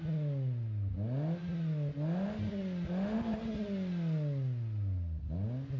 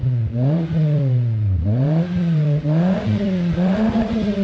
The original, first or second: first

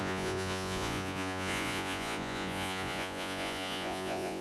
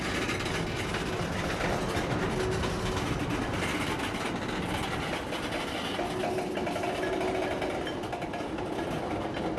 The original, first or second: second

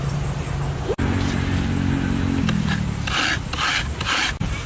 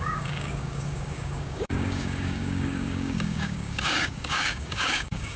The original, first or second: first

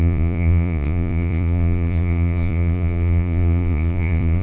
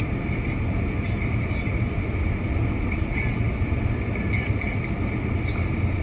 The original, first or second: second